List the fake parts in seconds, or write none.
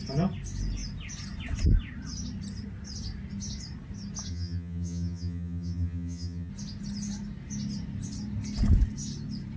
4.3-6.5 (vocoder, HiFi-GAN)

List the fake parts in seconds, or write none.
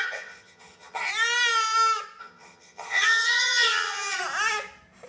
0.0-1.1 (vocoder, HiFi-GAN); 2.2-4.2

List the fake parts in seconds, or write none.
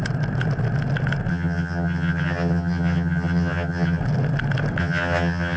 1.3-4.0 (vocoder, HiFi-GAN); 4.8-5.6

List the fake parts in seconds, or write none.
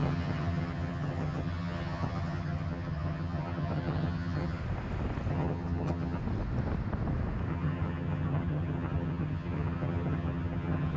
0.0-4.6 (vocoder, HiFi-GAN); 5.3-6.2; 7.5-11.0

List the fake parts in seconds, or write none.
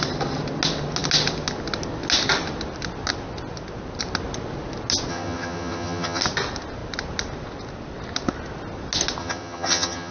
5.1-6.2 (vocoder, HiFi-GAN); 9.2-10.1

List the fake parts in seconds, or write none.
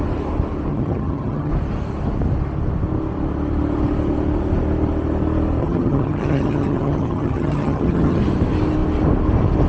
0.7-1.5 (vocoder, HiFi-GAN); 5.6-8.2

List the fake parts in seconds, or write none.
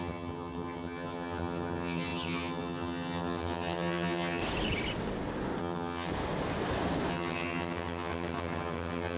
0.0-4.4 (vocoder, HiFi-GAN); 5.6-6.1; 7.1-9.2